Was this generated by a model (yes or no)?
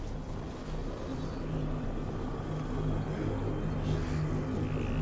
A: no